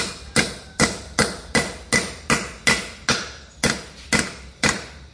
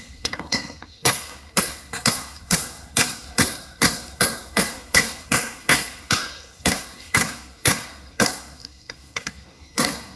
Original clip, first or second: first